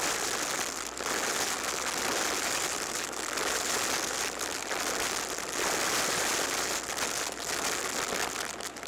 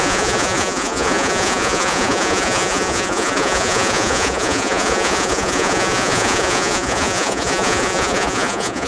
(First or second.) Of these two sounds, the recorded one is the first